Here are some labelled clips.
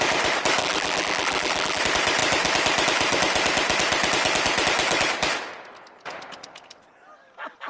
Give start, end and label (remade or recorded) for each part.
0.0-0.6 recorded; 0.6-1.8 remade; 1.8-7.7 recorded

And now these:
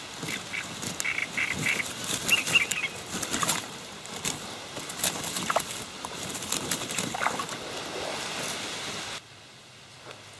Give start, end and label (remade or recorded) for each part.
0.0-10.4 recorded

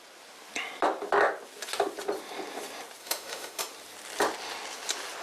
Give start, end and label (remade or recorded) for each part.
0.0-3.0 recorded; 3.0-3.6 remade; 3.6-5.2 recorded